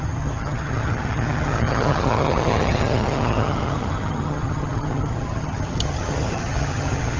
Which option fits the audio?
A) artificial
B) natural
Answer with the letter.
A